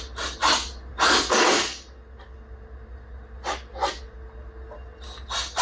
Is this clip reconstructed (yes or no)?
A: no